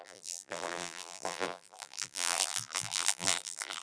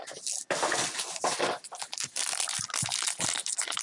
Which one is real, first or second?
second